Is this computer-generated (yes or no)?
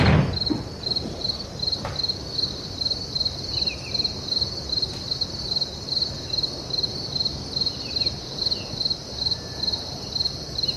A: no